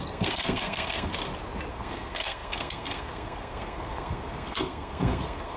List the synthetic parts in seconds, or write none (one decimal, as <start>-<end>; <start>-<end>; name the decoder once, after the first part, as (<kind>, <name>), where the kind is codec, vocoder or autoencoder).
0.0-1.1 (codec, SNAC); 1.7-5.6